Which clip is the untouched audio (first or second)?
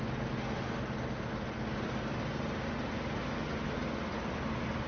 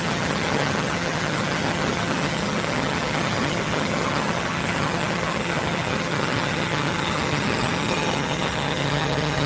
first